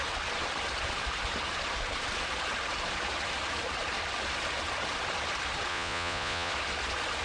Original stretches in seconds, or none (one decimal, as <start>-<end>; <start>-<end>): 0.0-5.7; 6.5-7.2